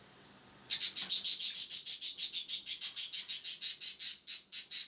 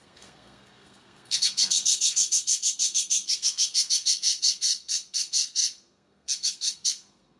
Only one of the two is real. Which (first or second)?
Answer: first